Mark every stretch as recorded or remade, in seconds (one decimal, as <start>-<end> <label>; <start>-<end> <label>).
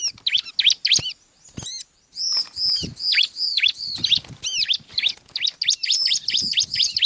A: 0.0-7.1 recorded